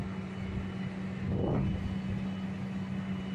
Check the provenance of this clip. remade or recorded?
recorded